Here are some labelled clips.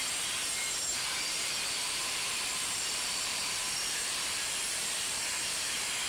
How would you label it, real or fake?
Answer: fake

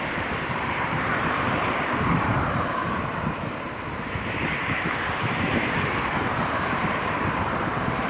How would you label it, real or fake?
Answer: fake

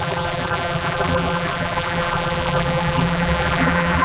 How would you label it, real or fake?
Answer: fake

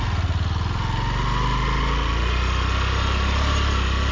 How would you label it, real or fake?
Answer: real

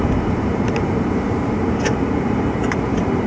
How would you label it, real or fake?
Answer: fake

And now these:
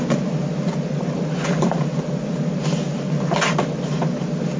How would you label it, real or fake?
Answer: real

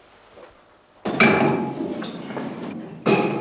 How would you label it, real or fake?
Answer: fake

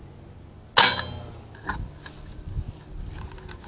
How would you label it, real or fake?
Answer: real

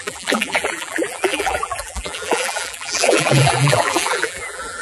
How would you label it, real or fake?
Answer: fake